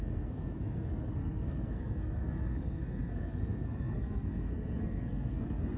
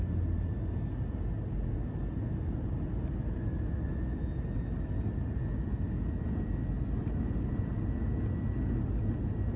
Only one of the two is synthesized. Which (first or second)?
first